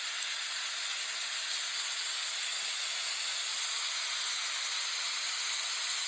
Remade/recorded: recorded